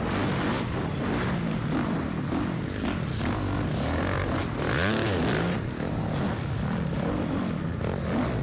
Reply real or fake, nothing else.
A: real